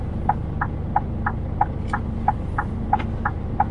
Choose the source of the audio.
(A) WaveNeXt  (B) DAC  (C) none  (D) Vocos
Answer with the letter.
C